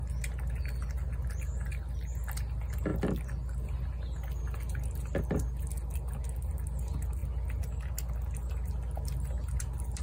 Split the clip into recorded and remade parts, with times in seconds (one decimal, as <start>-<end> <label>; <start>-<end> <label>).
0.0-10.0 recorded